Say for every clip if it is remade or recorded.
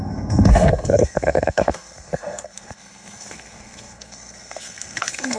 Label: remade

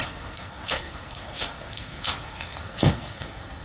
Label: remade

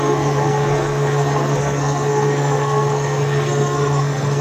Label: remade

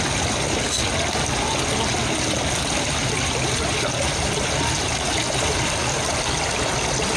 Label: recorded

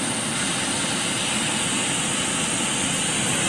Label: recorded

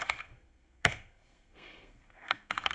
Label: remade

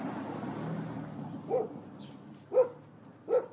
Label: recorded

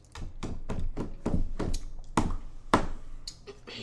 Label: recorded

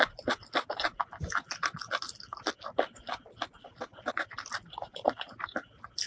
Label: recorded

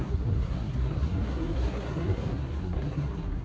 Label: remade